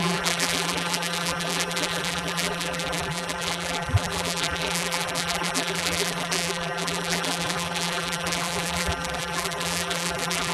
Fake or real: fake